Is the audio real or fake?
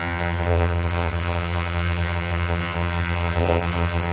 fake